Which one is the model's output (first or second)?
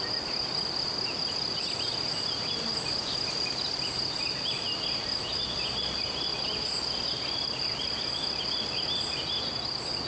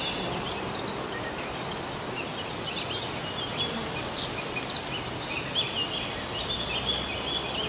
first